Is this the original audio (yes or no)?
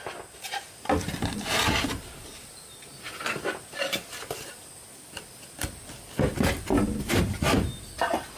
yes